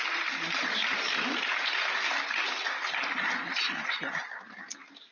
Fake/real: fake